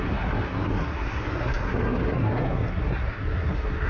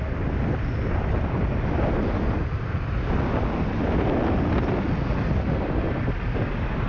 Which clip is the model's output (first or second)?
first